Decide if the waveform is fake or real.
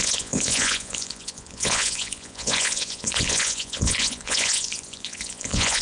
fake